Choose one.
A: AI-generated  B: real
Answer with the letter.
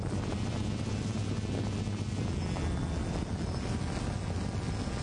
B